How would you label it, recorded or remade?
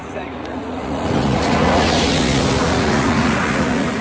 remade